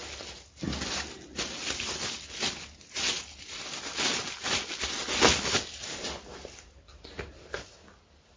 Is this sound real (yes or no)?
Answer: yes